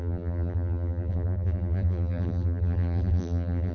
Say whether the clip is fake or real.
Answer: fake